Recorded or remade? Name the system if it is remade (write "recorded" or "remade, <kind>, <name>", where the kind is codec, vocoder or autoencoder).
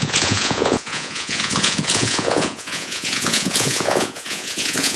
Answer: remade, vocoder, Vocos